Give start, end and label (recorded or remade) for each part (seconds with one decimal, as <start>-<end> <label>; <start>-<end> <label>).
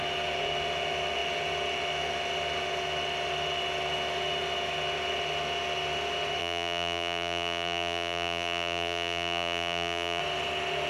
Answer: 0.0-6.4 recorded; 6.4-10.2 remade; 10.2-10.9 recorded